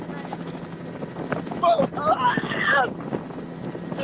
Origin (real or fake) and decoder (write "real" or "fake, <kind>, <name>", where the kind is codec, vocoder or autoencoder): real